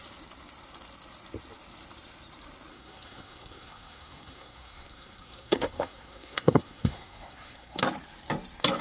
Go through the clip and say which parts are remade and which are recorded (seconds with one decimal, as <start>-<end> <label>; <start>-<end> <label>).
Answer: 0.0-2.7 recorded; 2.7-7.8 remade; 7.8-8.8 recorded